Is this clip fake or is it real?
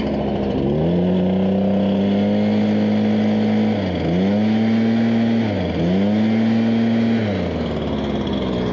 real